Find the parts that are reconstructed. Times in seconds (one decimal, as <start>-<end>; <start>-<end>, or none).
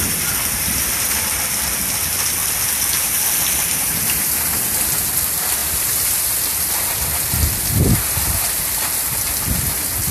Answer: 5.6-6.2